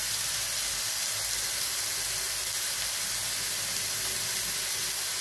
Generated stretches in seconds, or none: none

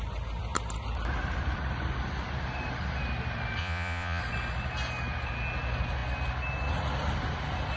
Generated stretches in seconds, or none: 3.6-4.2 (vocoder, Vocos)

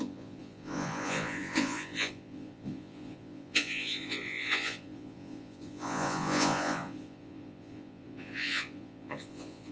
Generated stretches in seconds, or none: 0.0-9.7 (vocoder, Vocos)

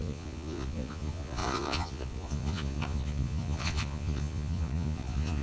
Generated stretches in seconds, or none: 0.0-5.4 (vocoder, Vocos)

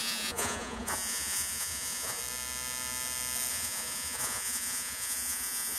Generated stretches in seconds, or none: 0.0-2.2 (vocoder, Vocos); 3.5-5.8

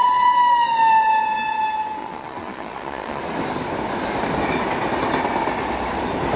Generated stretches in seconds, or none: 2.0-3.2 (vocoder, Vocos)

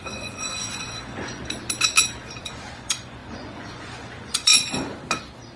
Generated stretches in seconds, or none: 0.0-1.4 (vocoder, Vocos); 2.4-4.5

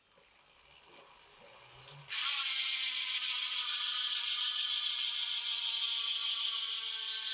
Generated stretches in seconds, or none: 2.4-5.8 (vocoder, Vocos); 6.2-6.7